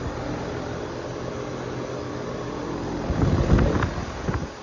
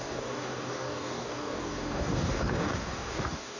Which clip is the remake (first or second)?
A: second